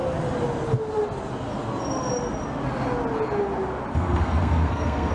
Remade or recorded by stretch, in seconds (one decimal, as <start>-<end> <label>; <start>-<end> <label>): 0.0-3.9 recorded; 3.9-5.1 remade